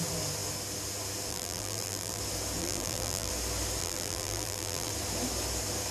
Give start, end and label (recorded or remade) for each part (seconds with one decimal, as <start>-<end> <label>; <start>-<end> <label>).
0.0-1.3 recorded; 1.3-2.2 remade; 2.2-2.6 recorded; 2.6-3.3 remade; 3.3-3.8 recorded; 3.8-4.9 remade; 4.9-5.9 recorded

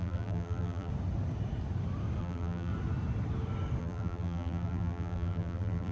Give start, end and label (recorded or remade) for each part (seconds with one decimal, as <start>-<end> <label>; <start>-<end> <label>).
0.0-0.9 remade; 0.9-2.2 recorded; 2.2-2.7 remade; 2.7-3.8 recorded; 3.8-5.9 remade

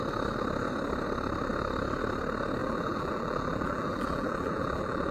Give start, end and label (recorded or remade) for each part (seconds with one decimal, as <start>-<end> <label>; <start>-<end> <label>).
0.0-2.6 recorded; 2.6-5.1 remade

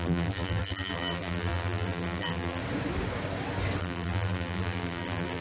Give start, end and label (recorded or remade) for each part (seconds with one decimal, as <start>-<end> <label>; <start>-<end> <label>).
0.0-2.6 remade; 2.6-3.8 recorded; 3.8-5.4 remade